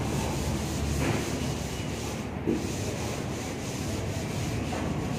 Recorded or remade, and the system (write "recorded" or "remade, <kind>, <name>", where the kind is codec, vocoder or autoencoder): recorded